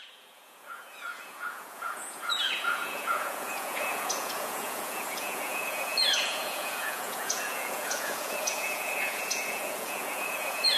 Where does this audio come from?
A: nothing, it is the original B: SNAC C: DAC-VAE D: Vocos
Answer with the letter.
D